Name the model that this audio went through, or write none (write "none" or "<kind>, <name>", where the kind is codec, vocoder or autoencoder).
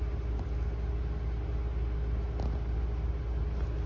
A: none